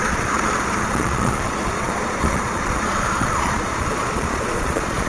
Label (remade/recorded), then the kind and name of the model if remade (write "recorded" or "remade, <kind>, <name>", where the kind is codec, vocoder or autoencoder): remade, vocoder, Vocos